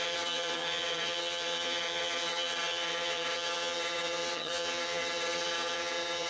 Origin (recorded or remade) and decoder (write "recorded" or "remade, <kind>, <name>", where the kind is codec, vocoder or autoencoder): remade, vocoder, HiFi-GAN